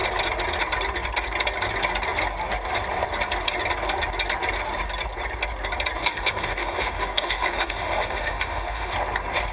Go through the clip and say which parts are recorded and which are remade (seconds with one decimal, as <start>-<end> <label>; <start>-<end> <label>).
0.0-6.0 recorded; 6.0-8.9 remade; 8.9-9.5 recorded

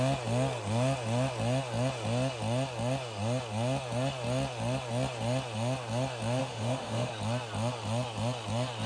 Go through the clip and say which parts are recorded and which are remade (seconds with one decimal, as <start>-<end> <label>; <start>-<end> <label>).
0.0-6.4 recorded; 6.4-7.1 remade; 7.1-8.9 recorded

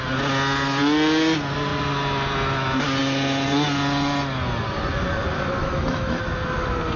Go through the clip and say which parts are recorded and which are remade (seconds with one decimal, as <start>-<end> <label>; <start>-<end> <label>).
0.0-5.6 recorded; 5.6-6.2 remade; 6.2-7.0 recorded